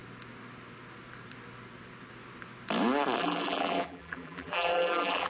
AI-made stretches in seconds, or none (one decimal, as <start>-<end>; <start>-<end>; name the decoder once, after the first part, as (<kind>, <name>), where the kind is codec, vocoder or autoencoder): 3.2-5.3 (vocoder, BigVGAN v2)